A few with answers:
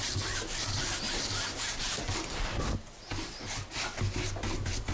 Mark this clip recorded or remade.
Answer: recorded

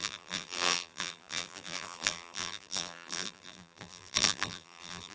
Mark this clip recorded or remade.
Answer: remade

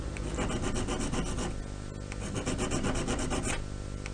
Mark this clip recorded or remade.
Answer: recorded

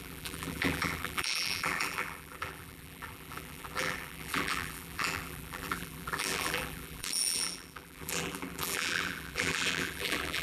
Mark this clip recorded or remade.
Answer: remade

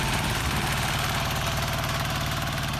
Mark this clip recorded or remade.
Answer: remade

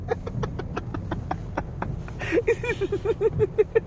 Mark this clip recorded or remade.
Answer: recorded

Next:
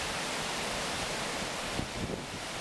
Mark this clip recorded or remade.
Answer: recorded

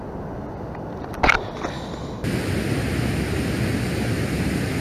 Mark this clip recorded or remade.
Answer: recorded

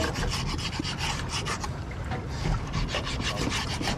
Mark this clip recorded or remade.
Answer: recorded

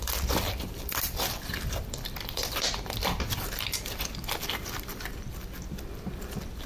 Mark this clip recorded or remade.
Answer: remade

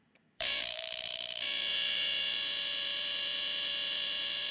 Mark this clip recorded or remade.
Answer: remade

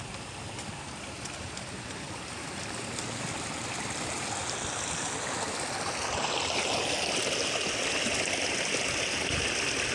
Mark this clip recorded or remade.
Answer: recorded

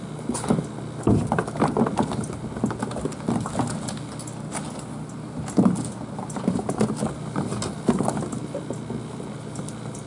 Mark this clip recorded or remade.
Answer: recorded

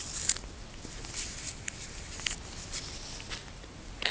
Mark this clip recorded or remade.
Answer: recorded